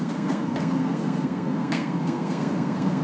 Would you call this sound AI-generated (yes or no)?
yes